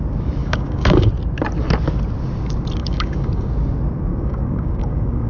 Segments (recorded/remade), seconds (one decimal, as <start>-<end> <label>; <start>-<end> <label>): 0.0-0.4 recorded; 0.4-1.1 remade; 1.1-2.8 recorded; 2.8-3.5 remade; 3.5-4.1 recorded; 4.1-5.3 remade